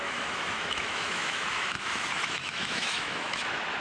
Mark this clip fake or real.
fake